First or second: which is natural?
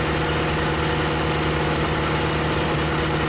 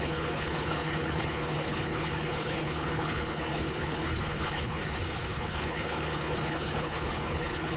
first